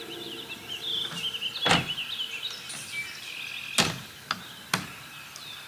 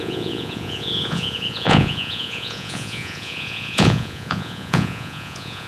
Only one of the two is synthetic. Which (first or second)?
second